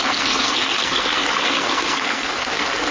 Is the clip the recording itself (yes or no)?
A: no